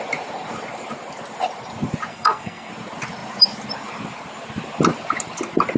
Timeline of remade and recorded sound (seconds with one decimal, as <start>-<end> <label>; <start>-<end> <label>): 0.0-2.1 recorded; 2.1-2.7 remade; 2.7-5.8 recorded